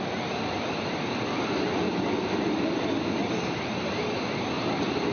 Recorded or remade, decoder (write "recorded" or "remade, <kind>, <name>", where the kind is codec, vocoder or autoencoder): recorded